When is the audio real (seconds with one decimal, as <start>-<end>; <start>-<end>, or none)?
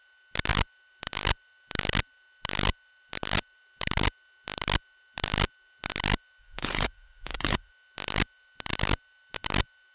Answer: 0.0-6.4; 7.7-9.9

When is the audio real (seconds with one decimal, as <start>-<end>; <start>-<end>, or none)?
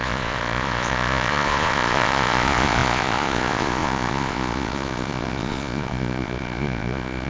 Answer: none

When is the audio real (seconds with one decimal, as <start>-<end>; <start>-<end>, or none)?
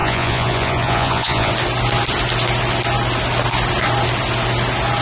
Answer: 1.5-5.0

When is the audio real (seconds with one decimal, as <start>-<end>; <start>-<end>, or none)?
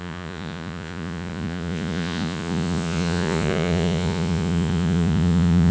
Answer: none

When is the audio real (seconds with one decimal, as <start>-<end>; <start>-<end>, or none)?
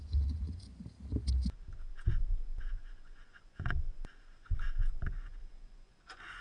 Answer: 0.7-1.9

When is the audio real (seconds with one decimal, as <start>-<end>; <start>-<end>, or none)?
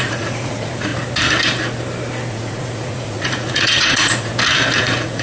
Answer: 0.9-2.3; 4.3-4.8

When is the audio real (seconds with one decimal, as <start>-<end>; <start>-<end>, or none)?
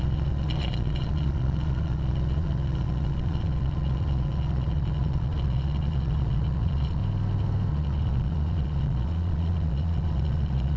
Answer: 7.0-7.7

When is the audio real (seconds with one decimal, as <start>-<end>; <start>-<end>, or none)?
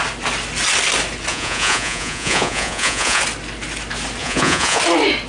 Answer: 0.0-1.3; 3.2-4.2; 4.8-5.3